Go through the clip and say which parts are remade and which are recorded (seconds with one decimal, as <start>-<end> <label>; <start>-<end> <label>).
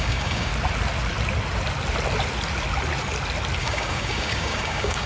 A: 0.0-0.5 remade; 0.5-3.6 recorded; 3.6-5.1 remade